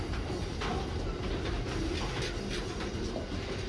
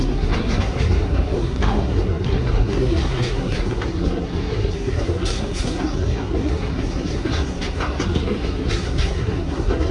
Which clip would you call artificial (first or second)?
second